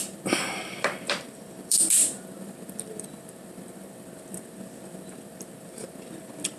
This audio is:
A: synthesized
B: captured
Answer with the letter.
A